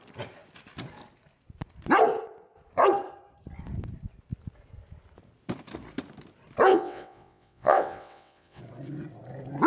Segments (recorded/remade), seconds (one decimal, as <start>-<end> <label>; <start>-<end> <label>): 0.0-6.7 recorded; 6.7-8.6 remade; 8.6-9.7 recorded